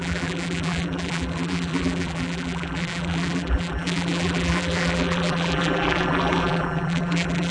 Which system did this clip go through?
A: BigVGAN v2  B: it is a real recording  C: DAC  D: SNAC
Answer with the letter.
A